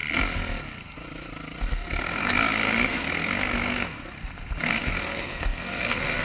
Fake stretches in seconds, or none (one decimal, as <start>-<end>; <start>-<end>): 1.7-3.9; 4.6-6.2